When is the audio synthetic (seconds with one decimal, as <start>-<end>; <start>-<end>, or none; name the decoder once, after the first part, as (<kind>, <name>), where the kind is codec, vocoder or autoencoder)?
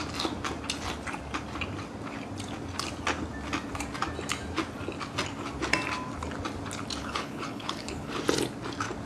7.0-8.1 (codec, HILCodec)